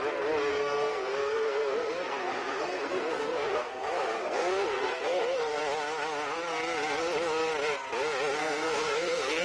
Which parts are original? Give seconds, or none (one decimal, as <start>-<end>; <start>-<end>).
0.0-0.5; 5.6-8.4